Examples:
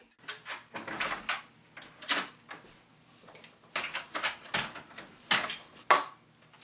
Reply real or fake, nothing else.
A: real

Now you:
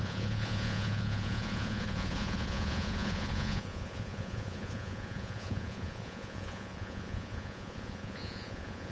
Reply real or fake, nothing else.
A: fake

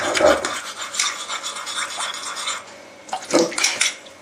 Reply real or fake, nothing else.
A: fake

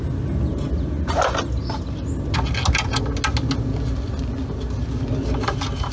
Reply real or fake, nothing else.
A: real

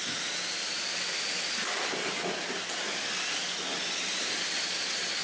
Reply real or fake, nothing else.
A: real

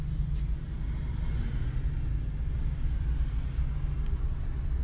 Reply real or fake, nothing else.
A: real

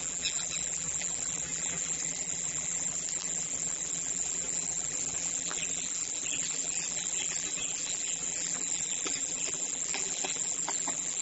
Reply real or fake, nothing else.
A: fake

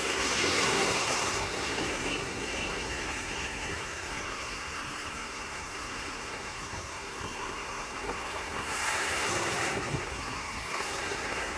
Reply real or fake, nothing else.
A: fake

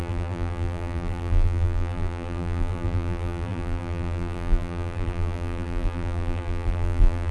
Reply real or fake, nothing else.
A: fake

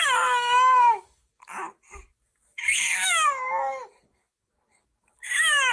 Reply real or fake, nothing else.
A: fake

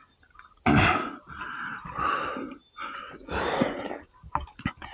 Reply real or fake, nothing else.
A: real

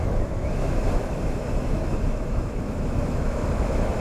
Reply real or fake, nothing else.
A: fake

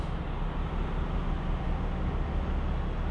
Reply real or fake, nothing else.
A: real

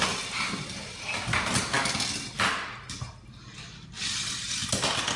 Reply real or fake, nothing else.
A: real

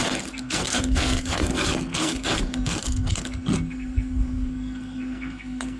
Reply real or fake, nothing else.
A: fake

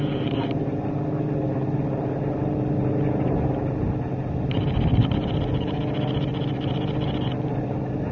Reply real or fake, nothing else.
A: real